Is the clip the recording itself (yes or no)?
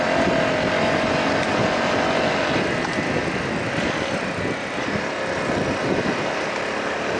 yes